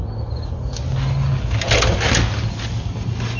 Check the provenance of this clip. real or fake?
real